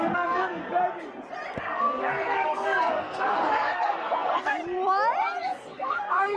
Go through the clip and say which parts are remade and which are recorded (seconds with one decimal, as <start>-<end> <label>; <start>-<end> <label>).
0.0-0.6 remade; 0.6-1.6 recorded; 1.6-4.6 remade; 4.6-5.4 recorded; 5.4-6.4 remade